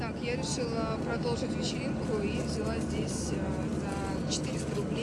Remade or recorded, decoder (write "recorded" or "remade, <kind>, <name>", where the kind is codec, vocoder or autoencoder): recorded